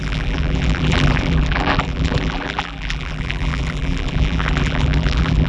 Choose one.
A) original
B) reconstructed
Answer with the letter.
B